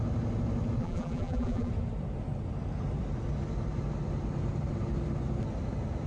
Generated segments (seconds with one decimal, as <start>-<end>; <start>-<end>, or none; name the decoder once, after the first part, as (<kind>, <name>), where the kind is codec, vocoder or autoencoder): 0.8-1.7 (vocoder, BigVGAN v2)